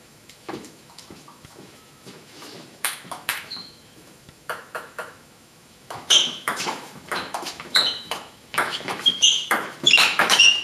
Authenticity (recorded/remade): remade